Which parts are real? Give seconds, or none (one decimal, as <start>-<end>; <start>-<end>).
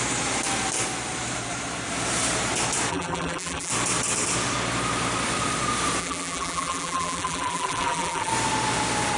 0.0-2.9; 3.7-6.0; 8.3-9.2